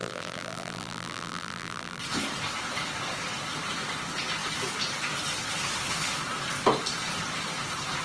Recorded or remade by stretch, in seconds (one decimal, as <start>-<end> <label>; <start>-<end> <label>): 0.0-2.0 remade; 2.0-8.0 recorded